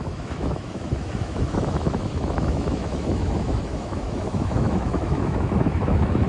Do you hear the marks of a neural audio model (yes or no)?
yes